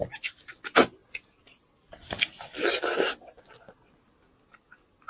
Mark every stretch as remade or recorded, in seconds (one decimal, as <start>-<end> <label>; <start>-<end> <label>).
0.0-5.1 recorded